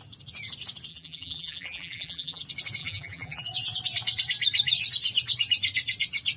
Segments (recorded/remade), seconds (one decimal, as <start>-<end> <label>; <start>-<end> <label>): 0.0-0.9 recorded; 0.9-2.4 remade; 2.4-2.8 recorded; 2.8-3.4 remade; 3.4-6.4 recorded